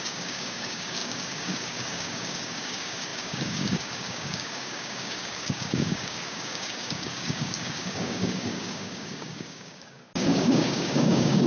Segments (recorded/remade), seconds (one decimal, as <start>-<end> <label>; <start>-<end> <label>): 0.0-11.5 remade